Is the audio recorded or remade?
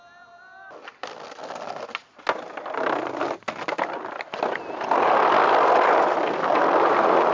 recorded